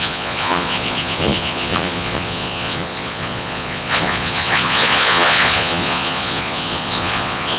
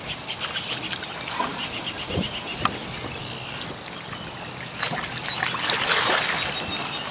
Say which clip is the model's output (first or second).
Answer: first